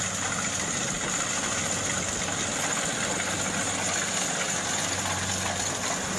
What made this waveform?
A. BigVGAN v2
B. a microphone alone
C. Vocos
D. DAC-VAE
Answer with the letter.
B